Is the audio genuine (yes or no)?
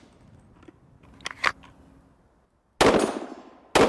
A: yes